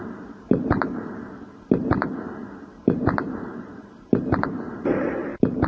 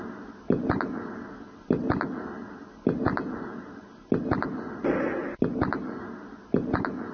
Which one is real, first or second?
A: second